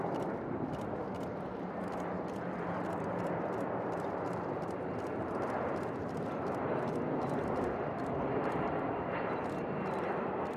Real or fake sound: fake